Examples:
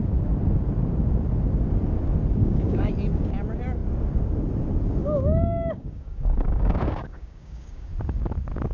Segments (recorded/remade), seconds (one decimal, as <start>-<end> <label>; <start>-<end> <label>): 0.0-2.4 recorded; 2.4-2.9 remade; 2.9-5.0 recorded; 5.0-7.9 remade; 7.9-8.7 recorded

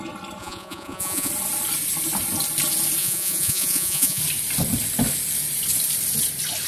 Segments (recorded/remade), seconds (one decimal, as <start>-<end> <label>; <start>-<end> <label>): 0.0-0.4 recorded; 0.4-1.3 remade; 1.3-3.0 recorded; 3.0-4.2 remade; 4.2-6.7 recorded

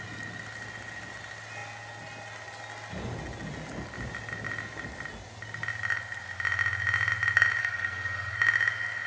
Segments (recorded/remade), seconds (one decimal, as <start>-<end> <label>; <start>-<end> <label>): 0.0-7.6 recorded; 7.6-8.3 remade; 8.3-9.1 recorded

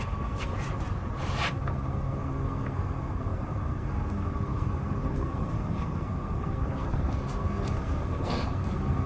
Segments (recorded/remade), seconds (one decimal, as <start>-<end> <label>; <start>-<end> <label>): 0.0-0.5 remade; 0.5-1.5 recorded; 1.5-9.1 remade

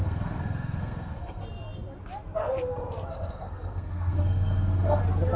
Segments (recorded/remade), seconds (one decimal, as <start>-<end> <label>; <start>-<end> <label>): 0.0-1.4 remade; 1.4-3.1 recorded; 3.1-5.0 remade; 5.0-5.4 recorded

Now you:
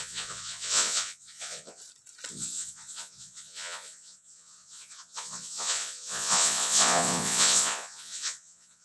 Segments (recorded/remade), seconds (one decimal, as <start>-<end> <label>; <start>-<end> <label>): 0.0-1.8 remade; 1.8-2.3 recorded; 2.3-8.8 remade